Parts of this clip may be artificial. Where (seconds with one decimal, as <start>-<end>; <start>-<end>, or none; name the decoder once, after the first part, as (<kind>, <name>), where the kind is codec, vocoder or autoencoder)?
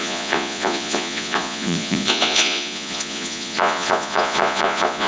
0.0-5.1 (vocoder, Vocos)